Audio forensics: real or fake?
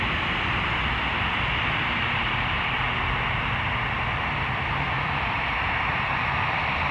fake